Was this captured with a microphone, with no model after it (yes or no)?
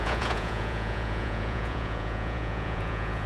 no